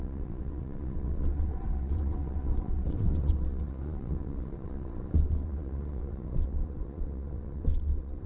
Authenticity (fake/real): fake